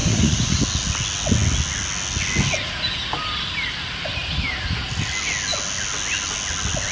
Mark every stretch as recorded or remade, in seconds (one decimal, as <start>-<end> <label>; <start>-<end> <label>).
0.0-0.6 remade; 0.6-6.9 recorded